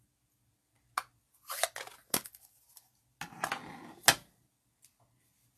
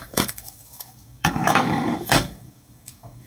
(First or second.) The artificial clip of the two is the second